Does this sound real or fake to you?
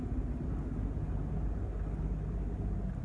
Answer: real